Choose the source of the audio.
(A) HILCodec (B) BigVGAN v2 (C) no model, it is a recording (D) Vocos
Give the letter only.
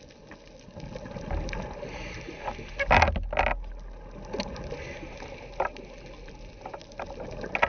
C